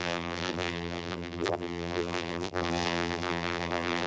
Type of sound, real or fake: fake